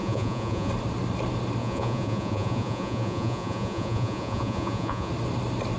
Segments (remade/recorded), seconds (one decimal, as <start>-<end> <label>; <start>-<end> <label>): 0.0-0.7 remade; 0.7-1.6 recorded; 1.6-5.1 remade; 5.1-5.8 recorded